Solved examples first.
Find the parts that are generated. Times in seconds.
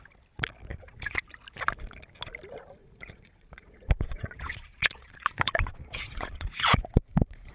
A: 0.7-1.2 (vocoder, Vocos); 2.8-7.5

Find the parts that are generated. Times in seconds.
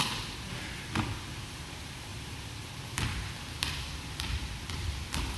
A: 2.1-5.4 (vocoder, BigVGAN v2)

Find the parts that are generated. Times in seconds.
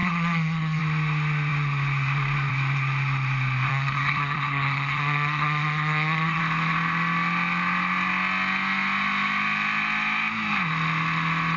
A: 0.0-0.8 (codec, SNAC); 3.7-6.4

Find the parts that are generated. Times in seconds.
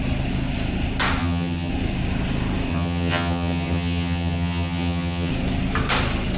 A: 1.2-1.7 (vocoder, HiFi-GAN); 2.7-5.3